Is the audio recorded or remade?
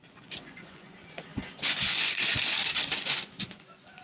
remade